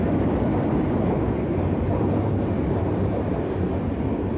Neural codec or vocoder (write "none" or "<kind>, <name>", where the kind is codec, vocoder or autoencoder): none